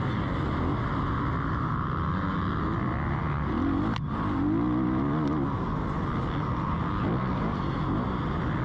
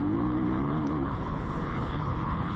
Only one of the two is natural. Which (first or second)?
first